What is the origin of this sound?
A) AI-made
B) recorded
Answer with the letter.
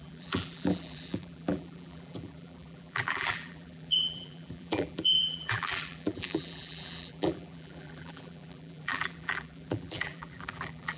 A